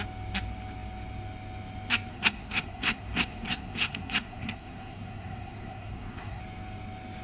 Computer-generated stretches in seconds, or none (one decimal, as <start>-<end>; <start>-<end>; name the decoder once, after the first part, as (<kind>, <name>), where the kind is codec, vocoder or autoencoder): 2.1-6.4 (codec, SNAC)